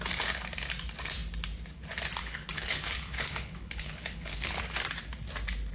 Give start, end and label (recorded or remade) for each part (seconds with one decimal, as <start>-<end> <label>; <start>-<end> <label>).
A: 0.0-2.2 recorded; 2.2-4.6 remade; 4.6-5.7 recorded